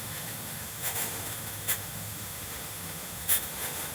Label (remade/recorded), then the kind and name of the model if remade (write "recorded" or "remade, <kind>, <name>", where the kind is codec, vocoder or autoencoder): remade, autoencoder, DAC-VAE